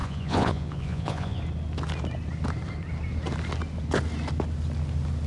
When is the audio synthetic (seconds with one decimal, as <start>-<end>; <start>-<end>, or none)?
0.0-1.4